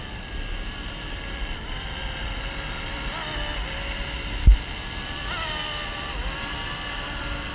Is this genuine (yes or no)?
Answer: yes